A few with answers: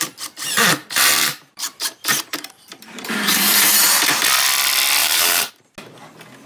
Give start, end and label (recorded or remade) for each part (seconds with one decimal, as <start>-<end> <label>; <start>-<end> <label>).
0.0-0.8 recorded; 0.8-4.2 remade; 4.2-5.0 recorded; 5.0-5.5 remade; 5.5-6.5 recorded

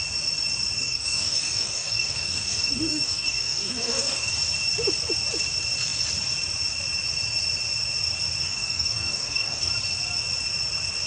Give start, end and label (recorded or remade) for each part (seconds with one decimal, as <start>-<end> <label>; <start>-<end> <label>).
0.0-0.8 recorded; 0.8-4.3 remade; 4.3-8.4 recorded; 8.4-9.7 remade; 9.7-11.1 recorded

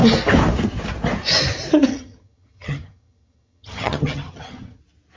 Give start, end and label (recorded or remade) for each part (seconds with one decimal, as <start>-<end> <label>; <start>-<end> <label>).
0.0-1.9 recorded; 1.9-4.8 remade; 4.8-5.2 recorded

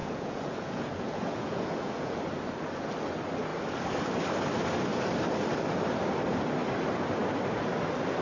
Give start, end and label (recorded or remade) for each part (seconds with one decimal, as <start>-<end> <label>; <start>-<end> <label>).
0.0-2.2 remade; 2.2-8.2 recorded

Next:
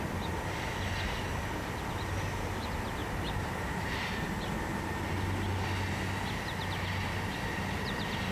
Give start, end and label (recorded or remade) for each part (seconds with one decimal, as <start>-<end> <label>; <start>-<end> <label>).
0.0-3.0 recorded; 3.0-5.0 remade; 5.0-8.3 recorded

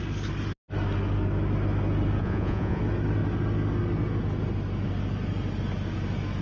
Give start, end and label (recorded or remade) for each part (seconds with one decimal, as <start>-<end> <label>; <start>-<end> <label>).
0.0-2.2 recorded; 2.2-2.8 remade; 2.8-6.4 recorded